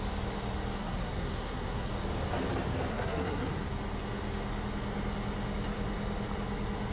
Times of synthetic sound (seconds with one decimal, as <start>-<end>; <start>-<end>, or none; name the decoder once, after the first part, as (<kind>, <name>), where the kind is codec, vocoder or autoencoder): 0.8-1.9 (codec, SNAC); 2.9-3.5